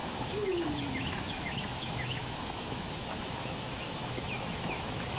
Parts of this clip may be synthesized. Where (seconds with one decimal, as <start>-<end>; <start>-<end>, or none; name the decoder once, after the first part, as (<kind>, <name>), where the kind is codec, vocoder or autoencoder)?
0.0-5.2 (autoencoder, DAC-VAE)